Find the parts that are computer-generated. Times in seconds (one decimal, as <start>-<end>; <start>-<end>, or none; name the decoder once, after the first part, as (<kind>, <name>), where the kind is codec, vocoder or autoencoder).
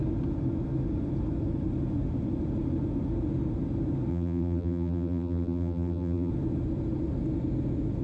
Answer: 4.1-6.3 (vocoder, BigVGAN v2)